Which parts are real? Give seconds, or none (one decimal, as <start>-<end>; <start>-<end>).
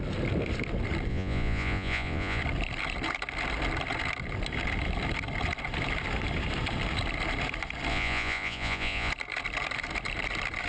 0.0-1.1; 2.4-7.9; 9.1-10.7